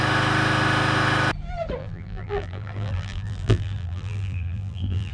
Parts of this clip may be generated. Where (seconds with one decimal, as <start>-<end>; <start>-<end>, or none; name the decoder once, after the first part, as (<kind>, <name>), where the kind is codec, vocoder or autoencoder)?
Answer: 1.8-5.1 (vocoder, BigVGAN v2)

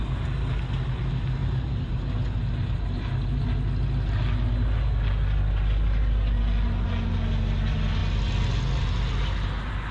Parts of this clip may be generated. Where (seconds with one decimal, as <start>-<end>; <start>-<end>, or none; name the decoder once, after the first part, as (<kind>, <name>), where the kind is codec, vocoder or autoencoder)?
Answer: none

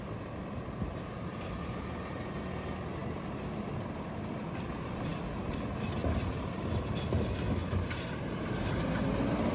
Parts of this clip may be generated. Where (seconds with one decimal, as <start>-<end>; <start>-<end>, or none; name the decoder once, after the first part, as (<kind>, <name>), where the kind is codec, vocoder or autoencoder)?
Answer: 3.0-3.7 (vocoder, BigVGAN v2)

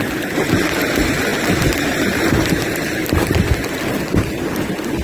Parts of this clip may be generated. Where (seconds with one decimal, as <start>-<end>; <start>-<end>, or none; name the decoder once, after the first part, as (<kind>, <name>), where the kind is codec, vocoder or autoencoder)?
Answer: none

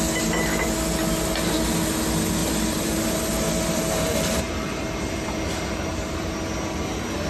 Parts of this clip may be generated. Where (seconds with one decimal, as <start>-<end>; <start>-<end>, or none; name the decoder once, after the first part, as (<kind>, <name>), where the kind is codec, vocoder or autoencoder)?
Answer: 2.4-6.3 (vocoder, BigVGAN v2)

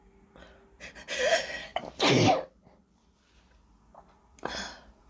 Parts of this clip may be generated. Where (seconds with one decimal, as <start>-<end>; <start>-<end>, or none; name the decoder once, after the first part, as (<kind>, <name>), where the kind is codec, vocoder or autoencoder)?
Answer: 1.7-3.1 (vocoder, BigVGAN v2)

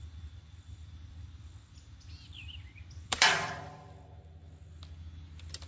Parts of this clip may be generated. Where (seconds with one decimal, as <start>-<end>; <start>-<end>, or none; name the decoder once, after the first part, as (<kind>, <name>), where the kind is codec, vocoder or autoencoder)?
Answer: 0.0-4.4 (vocoder, BigVGAN v2)